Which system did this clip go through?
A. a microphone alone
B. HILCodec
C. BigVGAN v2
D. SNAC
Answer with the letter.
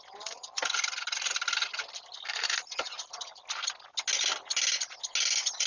A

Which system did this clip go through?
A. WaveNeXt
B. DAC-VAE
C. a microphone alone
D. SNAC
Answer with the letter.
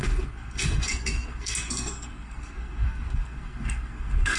D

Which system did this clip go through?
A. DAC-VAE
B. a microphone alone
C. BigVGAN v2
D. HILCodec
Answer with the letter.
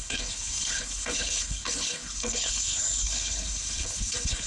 D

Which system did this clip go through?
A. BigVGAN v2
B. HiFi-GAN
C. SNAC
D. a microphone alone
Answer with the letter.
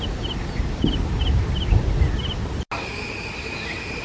D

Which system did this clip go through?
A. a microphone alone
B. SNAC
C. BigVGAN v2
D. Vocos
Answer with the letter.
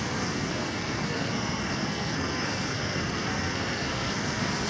B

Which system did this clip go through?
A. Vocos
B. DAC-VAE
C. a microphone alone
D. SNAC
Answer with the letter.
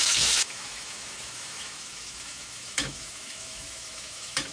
B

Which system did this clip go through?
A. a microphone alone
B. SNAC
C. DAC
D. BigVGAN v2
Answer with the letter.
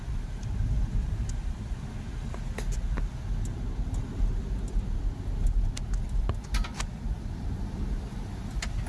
A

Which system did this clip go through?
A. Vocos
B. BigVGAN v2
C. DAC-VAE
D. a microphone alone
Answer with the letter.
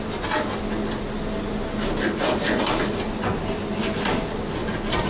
D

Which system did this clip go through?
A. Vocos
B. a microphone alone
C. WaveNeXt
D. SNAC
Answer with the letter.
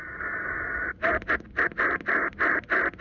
B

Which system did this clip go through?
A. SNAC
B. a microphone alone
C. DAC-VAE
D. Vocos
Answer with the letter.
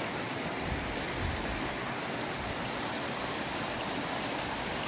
B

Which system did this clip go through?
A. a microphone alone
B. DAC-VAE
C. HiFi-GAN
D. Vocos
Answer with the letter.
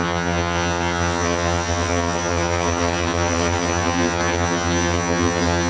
C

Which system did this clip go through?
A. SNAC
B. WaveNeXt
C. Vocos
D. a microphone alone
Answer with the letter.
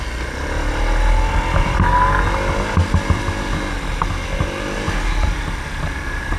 D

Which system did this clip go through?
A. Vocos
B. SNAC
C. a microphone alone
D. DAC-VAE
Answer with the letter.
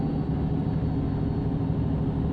C